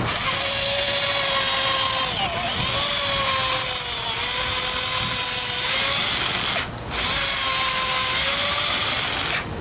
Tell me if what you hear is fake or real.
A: real